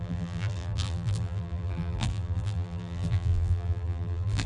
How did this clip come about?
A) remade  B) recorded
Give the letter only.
A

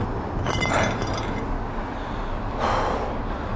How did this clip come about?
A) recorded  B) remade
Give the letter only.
A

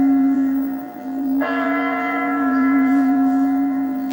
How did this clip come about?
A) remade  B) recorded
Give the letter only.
A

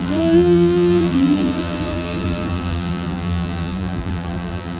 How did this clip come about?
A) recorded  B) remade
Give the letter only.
B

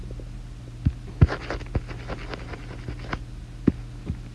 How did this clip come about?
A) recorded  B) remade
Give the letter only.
A